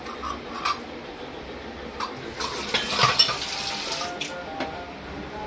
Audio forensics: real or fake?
real